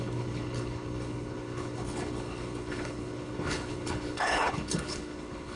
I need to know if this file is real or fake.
fake